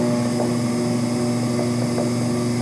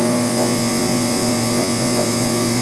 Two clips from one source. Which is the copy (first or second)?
second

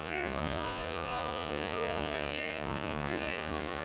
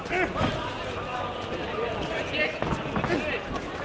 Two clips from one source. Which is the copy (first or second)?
first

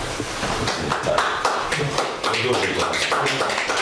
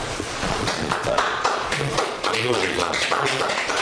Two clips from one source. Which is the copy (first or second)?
second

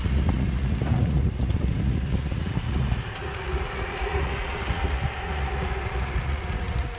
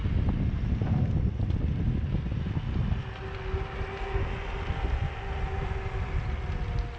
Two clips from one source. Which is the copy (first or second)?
first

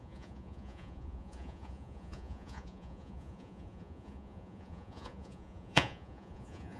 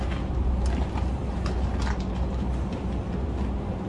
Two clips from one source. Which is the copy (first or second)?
first